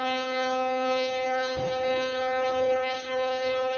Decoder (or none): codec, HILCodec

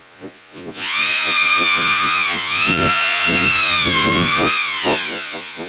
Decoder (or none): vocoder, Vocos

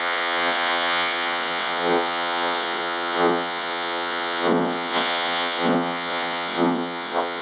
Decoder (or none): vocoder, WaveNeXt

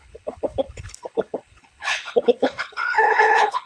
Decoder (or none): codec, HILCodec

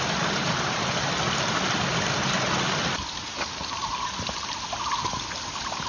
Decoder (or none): none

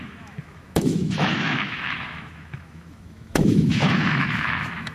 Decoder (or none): autoencoder, DAC-VAE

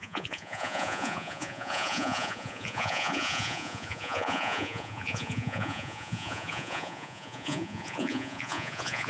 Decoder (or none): vocoder, Vocos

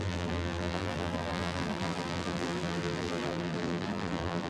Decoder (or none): vocoder, BigVGAN v2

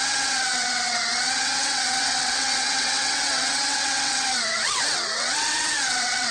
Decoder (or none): vocoder, WaveNeXt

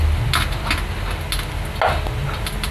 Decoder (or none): none